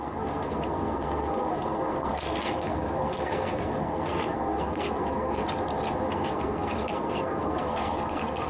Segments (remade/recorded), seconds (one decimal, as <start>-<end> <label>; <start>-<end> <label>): 0.0-5.4 remade; 5.4-6.1 recorded; 6.1-8.5 remade